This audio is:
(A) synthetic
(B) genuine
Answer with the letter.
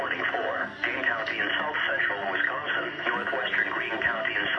B